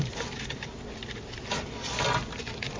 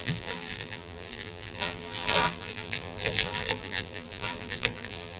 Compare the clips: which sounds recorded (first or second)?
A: first